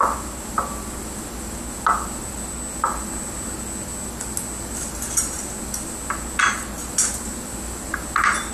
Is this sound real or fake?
real